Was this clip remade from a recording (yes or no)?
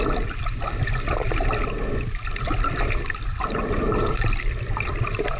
no